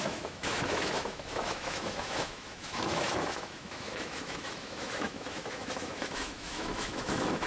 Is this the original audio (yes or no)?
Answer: no